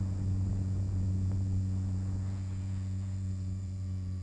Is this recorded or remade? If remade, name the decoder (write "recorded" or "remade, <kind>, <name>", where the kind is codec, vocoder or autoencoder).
remade, vocoder, Vocos